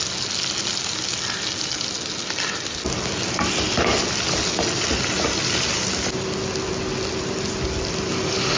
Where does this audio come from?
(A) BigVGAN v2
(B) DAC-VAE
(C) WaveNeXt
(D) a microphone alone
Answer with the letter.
D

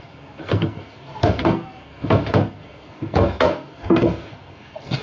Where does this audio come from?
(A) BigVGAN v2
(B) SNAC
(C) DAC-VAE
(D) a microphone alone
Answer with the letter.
B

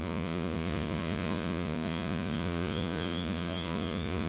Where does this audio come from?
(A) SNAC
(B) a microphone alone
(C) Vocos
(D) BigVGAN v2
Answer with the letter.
C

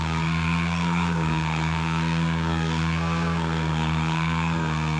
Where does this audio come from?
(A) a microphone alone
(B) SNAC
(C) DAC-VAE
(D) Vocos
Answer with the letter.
B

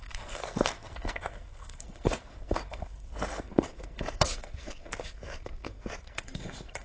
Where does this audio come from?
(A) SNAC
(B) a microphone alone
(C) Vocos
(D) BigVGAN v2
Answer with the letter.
A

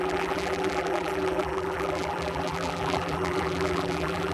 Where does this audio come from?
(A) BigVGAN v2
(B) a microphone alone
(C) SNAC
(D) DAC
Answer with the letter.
A